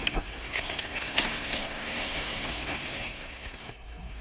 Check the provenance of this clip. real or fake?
fake